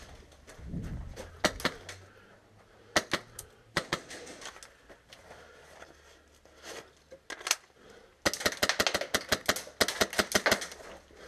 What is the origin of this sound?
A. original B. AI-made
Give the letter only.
A